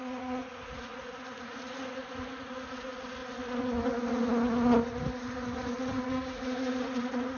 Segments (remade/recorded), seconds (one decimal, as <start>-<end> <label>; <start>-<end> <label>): 0.0-3.2 remade; 3.2-5.8 recorded; 5.8-7.4 remade